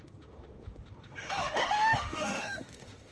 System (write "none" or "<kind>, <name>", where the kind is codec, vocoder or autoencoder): autoencoder, DAC-VAE